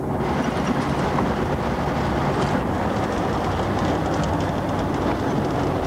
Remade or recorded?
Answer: recorded